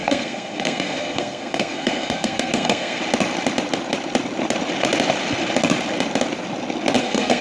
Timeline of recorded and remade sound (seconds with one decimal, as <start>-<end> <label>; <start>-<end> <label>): 0.0-3.0 remade; 3.0-7.0 recorded; 7.0-7.4 remade